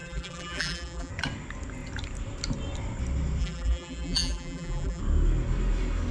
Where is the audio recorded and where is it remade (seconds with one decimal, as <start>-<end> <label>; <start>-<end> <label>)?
0.0-1.1 remade; 1.1-3.4 recorded; 3.4-5.0 remade; 5.0-6.1 recorded

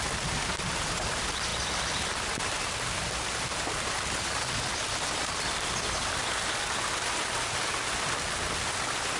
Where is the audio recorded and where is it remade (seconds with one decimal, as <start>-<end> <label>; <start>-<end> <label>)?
0.0-9.2 recorded